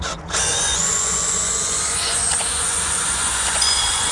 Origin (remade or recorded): remade